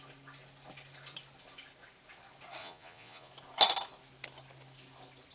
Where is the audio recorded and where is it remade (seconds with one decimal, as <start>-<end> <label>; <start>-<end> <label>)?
0.0-2.6 recorded; 2.6-3.3 remade; 3.3-5.3 recorded